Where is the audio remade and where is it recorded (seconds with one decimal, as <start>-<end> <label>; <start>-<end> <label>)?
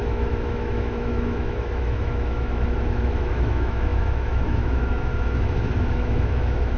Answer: 0.0-6.8 remade